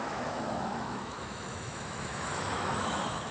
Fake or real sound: fake